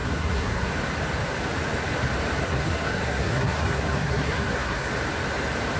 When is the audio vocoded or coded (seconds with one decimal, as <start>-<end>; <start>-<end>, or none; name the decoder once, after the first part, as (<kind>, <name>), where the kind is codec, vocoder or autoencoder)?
0.0-0.7 (codec, SNAC); 2.4-4.9